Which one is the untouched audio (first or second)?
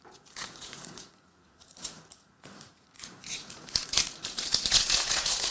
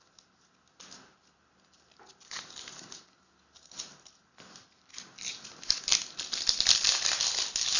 second